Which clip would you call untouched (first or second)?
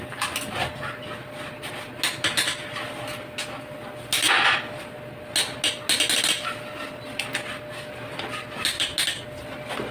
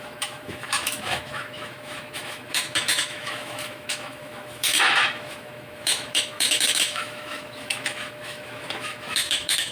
first